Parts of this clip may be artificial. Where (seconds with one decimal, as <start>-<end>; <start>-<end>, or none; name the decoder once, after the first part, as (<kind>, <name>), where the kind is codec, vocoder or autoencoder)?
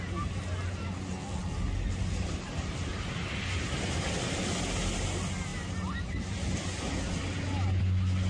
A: none